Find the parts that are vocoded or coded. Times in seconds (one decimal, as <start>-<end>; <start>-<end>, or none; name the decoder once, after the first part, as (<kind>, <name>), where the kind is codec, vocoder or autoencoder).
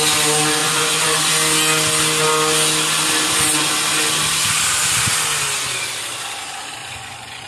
0.6-1.3 (vocoder, Vocos); 6.8-7.5